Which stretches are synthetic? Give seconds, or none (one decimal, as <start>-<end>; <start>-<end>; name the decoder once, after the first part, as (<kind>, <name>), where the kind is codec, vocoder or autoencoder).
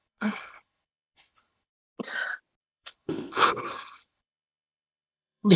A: 0.0-1.7 (codec, HILCodec); 2.6-5.6